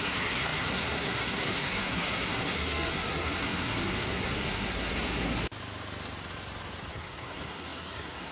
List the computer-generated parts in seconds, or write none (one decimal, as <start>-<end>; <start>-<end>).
0.0-5.4; 6.9-8.3

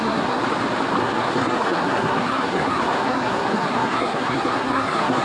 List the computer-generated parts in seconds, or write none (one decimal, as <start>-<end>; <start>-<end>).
0.0-0.4; 1.0-5.2

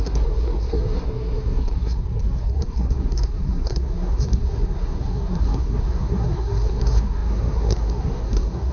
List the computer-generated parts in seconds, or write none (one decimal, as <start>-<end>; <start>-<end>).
0.0-8.7

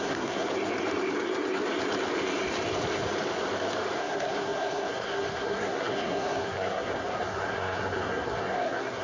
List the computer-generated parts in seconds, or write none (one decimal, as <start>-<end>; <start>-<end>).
0.0-0.5; 4.0-9.0

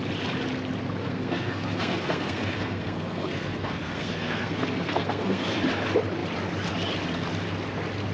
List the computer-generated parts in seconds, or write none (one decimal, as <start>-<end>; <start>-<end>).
1.0-5.6